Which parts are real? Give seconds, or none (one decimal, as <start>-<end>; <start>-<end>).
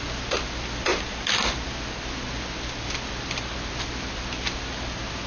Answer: 0.0-5.3